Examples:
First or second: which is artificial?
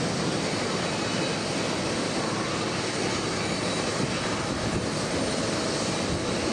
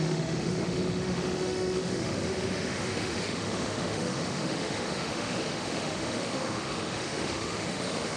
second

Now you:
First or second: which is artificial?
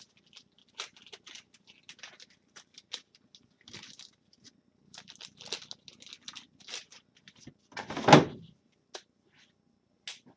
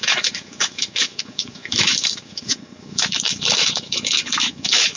second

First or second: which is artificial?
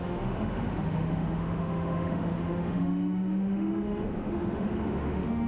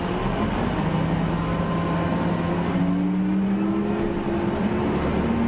first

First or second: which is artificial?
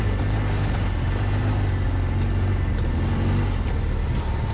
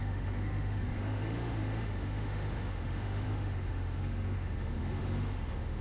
second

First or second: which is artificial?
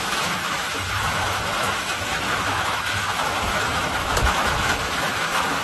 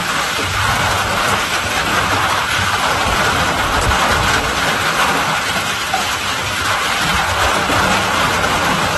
first